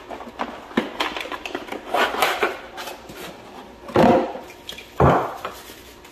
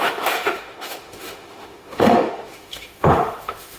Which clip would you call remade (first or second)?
second